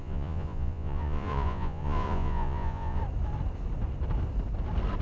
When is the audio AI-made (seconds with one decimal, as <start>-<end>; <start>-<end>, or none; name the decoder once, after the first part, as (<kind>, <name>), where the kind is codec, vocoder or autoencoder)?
0.0-3.0 (vocoder, Vocos)